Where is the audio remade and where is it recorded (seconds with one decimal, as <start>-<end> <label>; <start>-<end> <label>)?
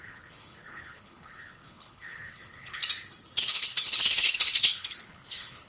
0.0-2.8 remade; 2.8-3.4 recorded; 3.4-5.7 remade